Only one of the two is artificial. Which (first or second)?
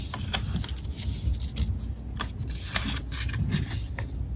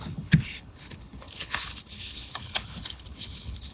second